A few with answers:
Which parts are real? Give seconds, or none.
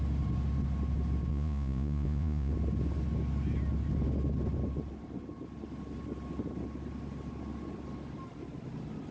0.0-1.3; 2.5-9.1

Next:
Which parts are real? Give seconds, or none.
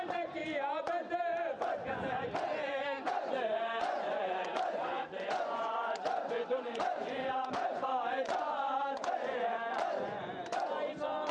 0.4-2.7